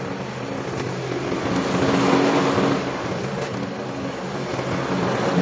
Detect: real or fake real